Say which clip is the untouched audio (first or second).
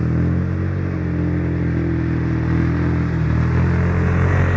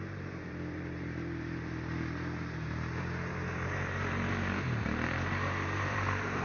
first